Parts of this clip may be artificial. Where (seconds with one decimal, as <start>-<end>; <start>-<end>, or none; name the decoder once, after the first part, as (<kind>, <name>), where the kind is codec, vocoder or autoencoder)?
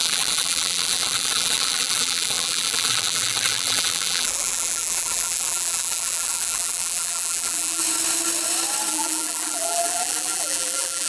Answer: 0.0-7.8 (vocoder, BigVGAN v2); 8.9-11.1